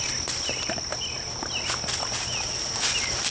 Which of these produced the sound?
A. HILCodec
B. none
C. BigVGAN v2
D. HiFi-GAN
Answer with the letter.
B